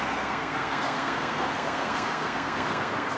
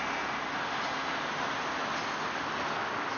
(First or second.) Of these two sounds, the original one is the second